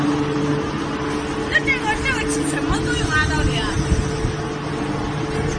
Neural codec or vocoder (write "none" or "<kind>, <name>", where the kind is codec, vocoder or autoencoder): none